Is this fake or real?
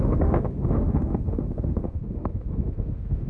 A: fake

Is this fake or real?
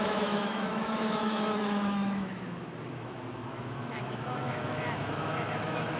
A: fake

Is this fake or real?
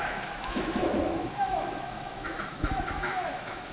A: fake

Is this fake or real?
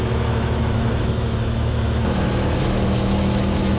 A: fake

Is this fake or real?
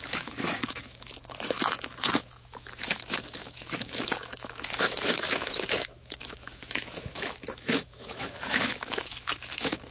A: fake